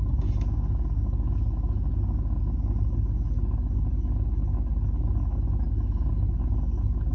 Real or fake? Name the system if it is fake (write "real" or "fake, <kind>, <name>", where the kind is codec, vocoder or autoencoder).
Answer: real